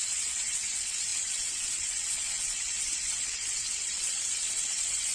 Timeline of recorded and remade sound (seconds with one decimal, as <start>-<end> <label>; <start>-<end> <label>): 0.0-5.1 remade